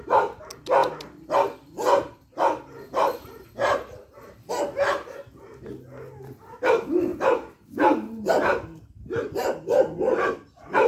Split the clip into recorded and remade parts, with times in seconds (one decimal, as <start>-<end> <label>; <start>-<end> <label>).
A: 0.0-7.1 recorded; 7.1-8.3 remade; 8.3-10.9 recorded